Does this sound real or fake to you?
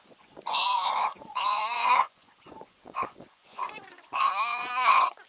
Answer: fake